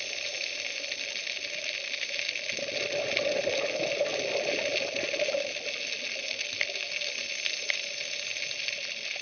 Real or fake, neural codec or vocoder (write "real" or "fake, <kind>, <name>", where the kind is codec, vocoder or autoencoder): real